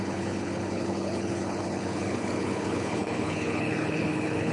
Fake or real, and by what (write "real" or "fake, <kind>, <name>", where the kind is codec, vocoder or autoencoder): fake, codec, HILCodec